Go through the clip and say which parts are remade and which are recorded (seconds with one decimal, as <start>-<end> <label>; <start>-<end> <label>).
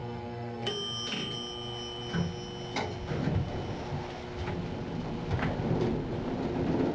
0.0-0.7 remade; 0.7-6.9 recorded